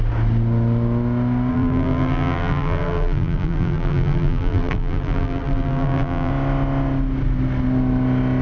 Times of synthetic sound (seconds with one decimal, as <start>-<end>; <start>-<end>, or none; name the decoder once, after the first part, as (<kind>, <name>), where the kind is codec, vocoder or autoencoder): 1.5-6.3 (vocoder, BigVGAN v2)